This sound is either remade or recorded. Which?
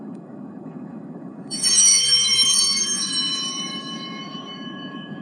remade